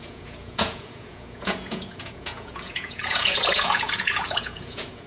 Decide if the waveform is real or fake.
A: fake